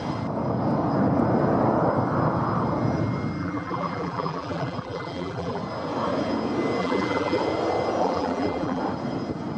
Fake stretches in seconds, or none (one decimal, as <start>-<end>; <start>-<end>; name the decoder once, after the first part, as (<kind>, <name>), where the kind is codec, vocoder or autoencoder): 3.4-5.6 (vocoder, BigVGAN v2); 6.8-7.4; 8.0-8.8